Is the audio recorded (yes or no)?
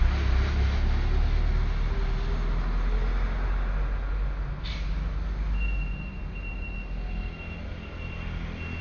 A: yes